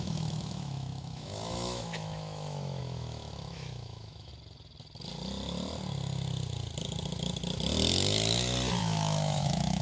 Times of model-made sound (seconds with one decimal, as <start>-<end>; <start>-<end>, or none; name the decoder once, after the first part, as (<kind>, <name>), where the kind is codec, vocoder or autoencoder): 0.0-4.3 (autoencoder, DAC-VAE); 8.8-9.8